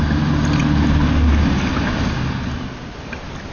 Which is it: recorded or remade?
recorded